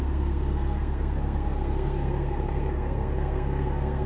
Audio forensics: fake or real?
fake